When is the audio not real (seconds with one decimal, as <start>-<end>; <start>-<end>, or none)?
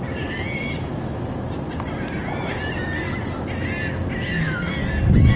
none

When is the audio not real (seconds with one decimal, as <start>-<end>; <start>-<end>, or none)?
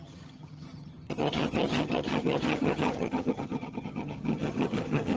0.0-5.2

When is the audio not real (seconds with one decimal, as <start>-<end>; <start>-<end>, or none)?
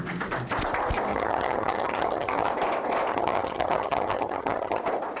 1.1-2.5; 3.1-4.8